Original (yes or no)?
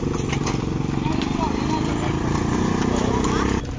yes